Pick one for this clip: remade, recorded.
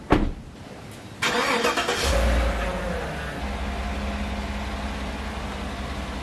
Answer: recorded